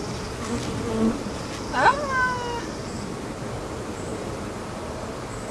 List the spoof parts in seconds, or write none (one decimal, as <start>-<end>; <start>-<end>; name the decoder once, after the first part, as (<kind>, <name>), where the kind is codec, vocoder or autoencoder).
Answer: none